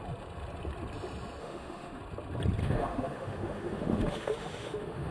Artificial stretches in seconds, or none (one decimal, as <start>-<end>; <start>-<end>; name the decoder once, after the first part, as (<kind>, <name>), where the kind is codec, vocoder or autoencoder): 1.4-2.0 (autoencoder, DAC-VAE); 2.6-5.1